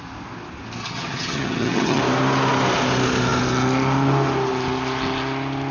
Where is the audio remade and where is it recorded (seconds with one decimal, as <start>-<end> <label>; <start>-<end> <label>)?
0.0-0.8 recorded; 0.8-2.0 remade; 2.0-5.7 recorded